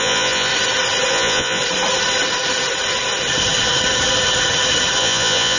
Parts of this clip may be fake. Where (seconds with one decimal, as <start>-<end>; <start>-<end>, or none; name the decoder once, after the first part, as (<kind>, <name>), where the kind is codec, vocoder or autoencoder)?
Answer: 0.0-0.5 (vocoder, Vocos); 1.1-1.6; 5.0-5.6